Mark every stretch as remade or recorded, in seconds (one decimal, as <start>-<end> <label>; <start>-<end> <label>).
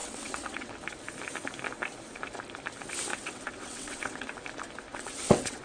0.0-0.7 remade; 0.7-3.1 recorded; 3.1-4.3 remade; 4.3-4.9 recorded; 4.9-5.6 remade